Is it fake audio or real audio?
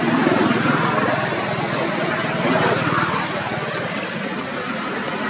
real